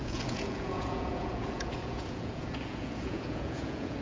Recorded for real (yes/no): no